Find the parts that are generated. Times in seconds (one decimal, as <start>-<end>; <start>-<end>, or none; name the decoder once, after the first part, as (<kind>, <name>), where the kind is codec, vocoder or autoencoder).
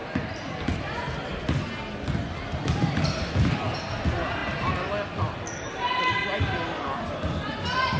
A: none